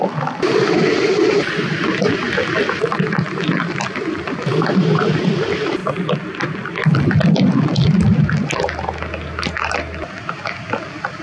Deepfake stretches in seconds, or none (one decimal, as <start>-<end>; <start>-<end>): none